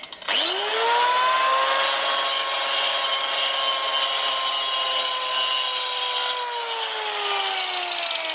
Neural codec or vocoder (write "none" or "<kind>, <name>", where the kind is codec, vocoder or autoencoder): none